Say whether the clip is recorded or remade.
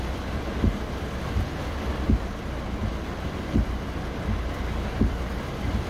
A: recorded